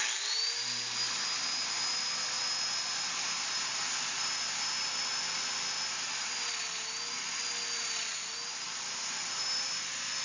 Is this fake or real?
real